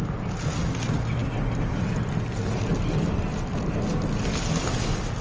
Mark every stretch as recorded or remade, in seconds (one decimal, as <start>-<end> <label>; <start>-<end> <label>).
0.0-5.2 recorded